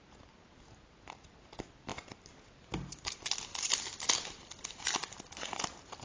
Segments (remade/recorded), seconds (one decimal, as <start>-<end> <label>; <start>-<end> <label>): 0.0-6.0 recorded